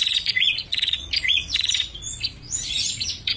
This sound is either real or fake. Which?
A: fake